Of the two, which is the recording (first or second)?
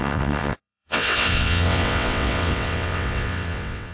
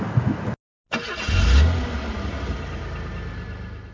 second